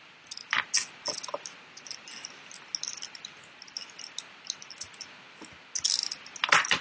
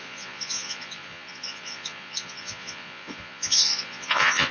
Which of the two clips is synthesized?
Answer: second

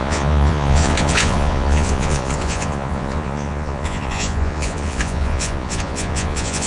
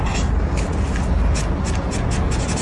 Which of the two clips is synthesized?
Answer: first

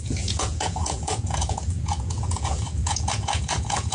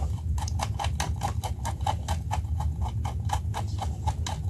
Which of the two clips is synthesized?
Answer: first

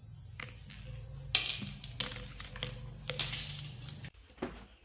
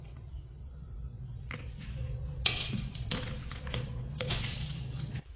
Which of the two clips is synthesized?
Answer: second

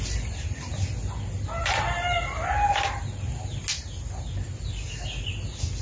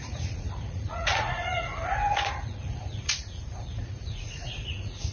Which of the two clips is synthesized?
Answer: second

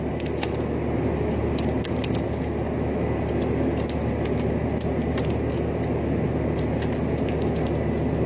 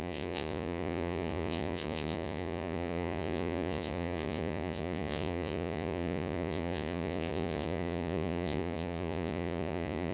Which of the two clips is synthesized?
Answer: second